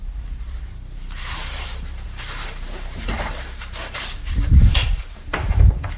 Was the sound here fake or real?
fake